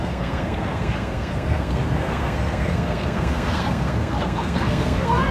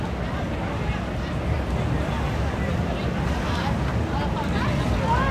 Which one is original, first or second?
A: second